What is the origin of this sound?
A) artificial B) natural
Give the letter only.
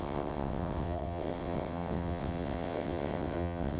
A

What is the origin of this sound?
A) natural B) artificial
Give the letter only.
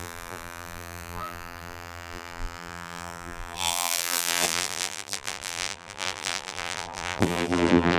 B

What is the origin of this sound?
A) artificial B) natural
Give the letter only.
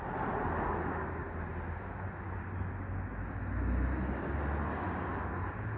B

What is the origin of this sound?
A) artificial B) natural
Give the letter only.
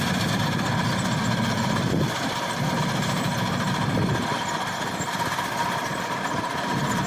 A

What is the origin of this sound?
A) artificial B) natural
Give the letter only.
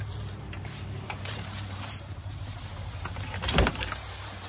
A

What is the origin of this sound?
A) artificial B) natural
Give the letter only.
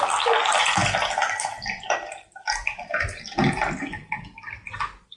B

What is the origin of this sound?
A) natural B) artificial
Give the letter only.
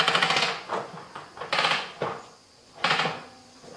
B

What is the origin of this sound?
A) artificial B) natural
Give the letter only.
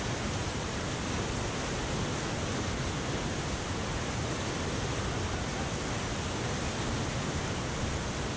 B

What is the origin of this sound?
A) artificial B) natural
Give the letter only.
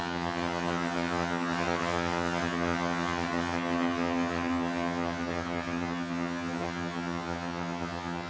A